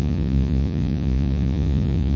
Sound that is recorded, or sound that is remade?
remade